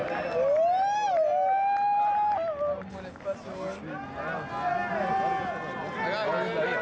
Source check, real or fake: real